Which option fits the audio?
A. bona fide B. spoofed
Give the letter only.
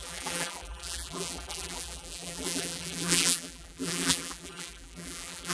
B